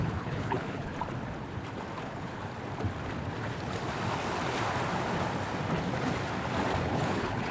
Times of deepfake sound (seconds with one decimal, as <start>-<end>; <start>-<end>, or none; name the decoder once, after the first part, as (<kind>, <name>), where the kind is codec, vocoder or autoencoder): 0.0-0.9 (codec, HILCodec); 2.0-2.4; 6.8-7.5